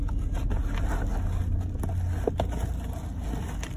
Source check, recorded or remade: recorded